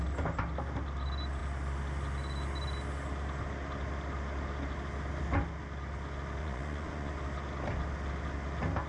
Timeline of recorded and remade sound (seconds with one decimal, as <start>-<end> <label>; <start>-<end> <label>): 0.0-6.4 recorded; 6.4-7.1 remade; 7.1-8.9 recorded